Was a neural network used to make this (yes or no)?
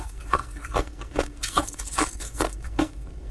yes